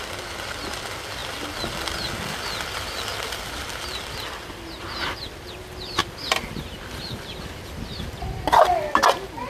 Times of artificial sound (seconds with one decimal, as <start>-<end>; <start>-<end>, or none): 6.0-9.5